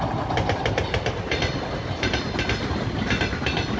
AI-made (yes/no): no